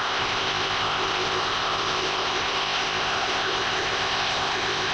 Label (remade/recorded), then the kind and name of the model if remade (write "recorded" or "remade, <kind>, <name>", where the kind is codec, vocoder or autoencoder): remade, codec, ZipCodec